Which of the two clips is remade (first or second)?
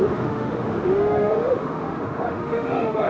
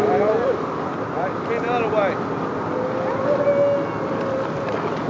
first